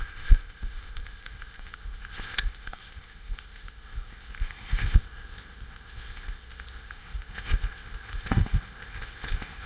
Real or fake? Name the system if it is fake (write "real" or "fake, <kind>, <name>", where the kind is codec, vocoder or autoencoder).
fake, codec, ZipCodec